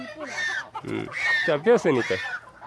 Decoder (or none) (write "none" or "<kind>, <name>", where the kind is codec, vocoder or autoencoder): none